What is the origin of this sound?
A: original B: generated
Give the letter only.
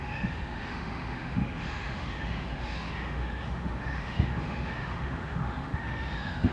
B